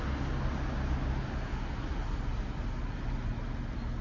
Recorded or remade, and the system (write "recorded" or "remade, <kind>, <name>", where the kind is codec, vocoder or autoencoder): recorded